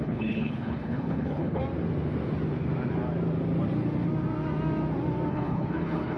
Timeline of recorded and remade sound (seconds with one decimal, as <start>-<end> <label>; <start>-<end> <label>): 0.0-1.6 remade; 1.6-5.3 recorded; 5.3-6.2 remade